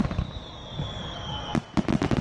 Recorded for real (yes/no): yes